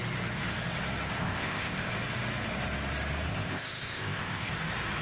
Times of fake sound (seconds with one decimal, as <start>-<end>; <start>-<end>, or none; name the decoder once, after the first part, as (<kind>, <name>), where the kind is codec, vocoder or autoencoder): 1.2-1.9 (codec, ZipCodec); 3.3-4.5